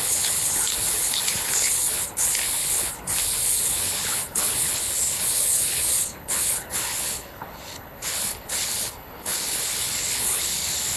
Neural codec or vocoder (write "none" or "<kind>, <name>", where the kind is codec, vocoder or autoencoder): codec, HILCodec